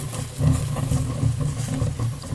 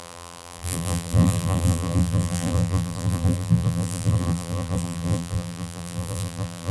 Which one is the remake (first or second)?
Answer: second